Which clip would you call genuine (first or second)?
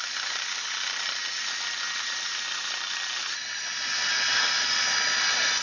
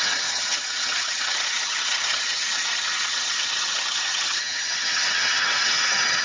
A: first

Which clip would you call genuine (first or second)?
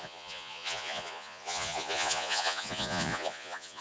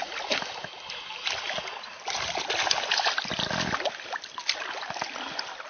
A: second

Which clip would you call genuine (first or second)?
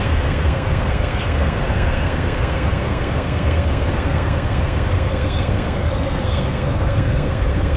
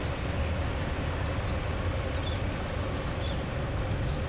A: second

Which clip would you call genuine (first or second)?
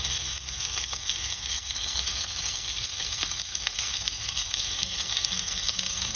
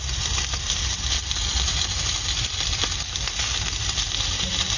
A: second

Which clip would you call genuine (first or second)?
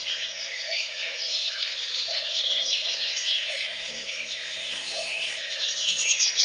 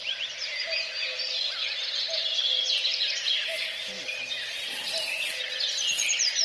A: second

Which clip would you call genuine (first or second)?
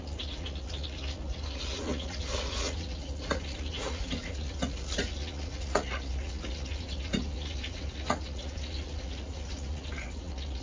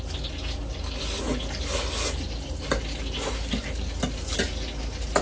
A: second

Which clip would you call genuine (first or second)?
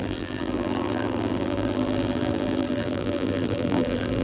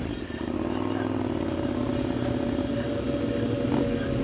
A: second